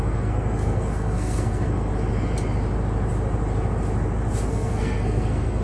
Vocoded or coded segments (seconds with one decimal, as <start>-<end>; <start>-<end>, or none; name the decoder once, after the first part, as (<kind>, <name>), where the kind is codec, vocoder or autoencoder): 0.0-1.9 (codec, SNAC); 4.5-5.6